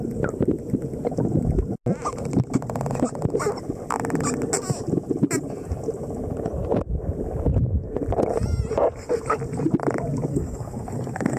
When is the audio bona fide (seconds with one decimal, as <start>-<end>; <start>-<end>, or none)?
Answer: 0.0-10.3